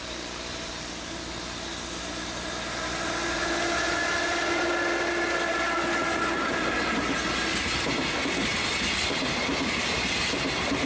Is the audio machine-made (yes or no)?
no